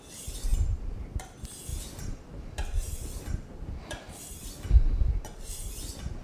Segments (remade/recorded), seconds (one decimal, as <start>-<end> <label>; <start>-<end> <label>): 0.0-6.2 recorded